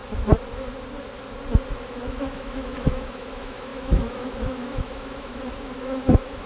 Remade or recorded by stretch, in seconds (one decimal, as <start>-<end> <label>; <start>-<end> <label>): 0.0-1.7 recorded; 1.7-6.5 remade